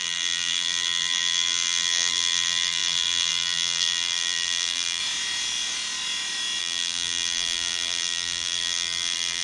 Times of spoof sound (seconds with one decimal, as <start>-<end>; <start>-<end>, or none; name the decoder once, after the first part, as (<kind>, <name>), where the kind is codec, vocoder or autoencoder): 0.0-5.0 (vocoder, BigVGAN v2); 6.6-9.4